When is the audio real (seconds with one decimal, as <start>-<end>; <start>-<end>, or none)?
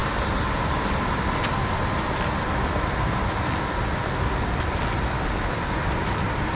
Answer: 0.0-6.6